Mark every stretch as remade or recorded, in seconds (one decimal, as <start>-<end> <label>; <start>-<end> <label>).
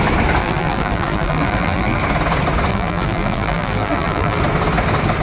0.0-0.4 recorded; 0.4-2.0 remade; 2.0-2.7 recorded; 2.7-4.4 remade; 4.4-5.2 recorded